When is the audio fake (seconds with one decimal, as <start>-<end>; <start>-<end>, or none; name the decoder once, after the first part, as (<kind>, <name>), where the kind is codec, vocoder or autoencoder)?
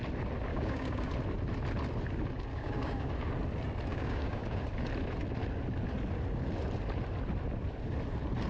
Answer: 0.5-1.1 (codec, DAC); 2.5-3.1; 3.9-4.6